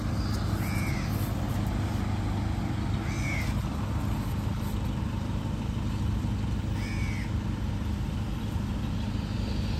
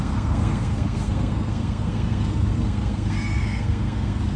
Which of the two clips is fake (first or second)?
second